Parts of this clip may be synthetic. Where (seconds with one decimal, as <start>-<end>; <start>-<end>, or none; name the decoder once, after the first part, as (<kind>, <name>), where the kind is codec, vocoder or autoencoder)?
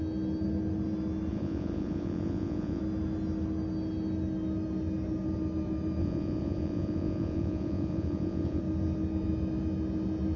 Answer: 1.3-2.8 (vocoder, Vocos); 6.0-8.6